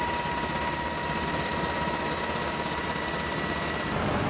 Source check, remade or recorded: recorded